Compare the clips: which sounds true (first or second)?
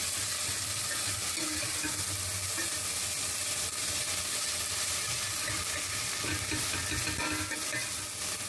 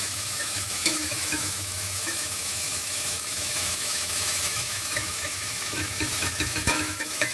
first